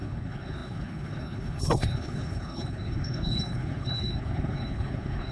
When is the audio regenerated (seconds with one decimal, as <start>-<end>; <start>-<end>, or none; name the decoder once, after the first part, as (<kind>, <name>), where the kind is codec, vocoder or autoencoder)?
0.0-5.3 (codec, HILCodec)